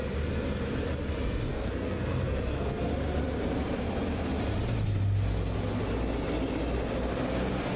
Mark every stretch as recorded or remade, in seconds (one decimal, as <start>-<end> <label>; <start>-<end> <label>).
0.0-1.5 recorded; 1.5-2.9 remade; 2.9-7.8 recorded